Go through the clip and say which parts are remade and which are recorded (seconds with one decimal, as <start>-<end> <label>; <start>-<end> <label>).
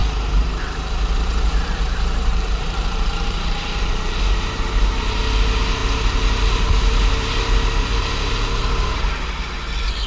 0.0-0.6 remade; 0.6-1.5 recorded; 1.5-4.2 remade; 4.2-10.1 recorded